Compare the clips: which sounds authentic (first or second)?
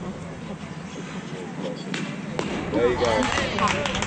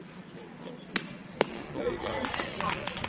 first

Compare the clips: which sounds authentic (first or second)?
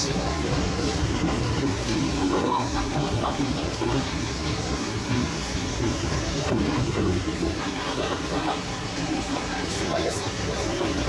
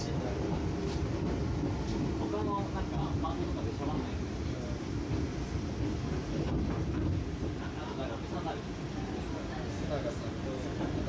second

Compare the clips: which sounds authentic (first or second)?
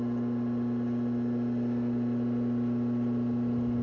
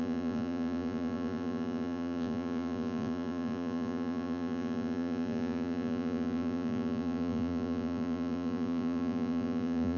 first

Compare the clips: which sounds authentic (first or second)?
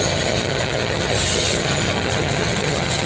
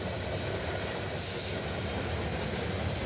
second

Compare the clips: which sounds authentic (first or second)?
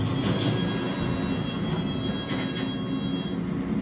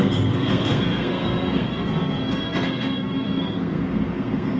first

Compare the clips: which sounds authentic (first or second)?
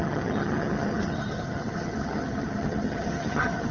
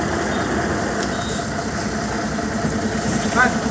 second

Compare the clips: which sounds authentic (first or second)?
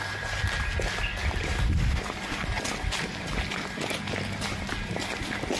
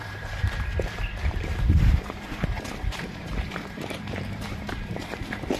first